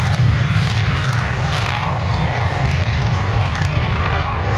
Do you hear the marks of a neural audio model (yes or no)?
yes